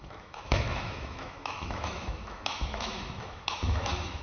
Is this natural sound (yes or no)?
no